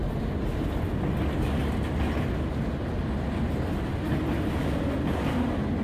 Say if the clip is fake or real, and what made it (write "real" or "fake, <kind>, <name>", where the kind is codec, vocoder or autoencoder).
real